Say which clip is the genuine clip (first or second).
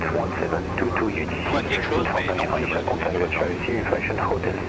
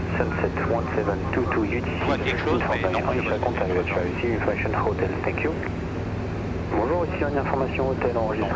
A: second